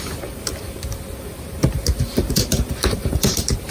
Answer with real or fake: fake